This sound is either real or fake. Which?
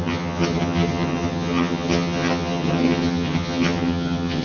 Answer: fake